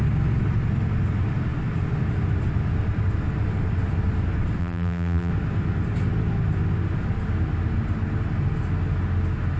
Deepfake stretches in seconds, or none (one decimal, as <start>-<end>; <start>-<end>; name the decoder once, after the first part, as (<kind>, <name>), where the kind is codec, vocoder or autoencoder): 4.6-5.3 (vocoder, BigVGAN v2)